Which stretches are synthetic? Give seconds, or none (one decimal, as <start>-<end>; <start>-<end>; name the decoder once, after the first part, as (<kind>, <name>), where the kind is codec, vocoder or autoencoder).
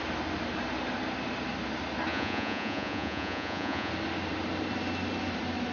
2.1-3.9 (vocoder, Vocos)